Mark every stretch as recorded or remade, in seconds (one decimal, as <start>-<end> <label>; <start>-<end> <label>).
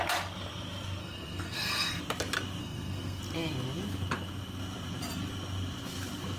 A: 0.0-1.0 recorded; 1.0-2.0 remade; 2.0-2.6 recorded; 2.6-3.2 remade; 3.2-6.4 recorded